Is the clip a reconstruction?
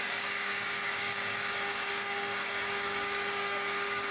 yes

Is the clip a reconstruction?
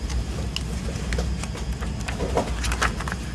no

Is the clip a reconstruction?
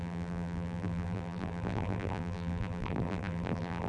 yes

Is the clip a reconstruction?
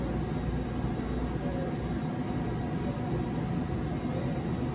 no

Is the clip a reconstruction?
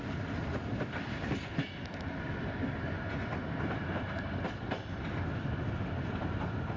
no